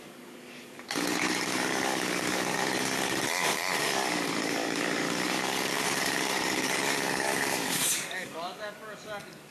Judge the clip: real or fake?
fake